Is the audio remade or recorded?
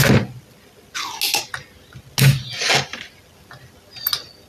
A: recorded